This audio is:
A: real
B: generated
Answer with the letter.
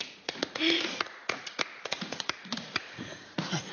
B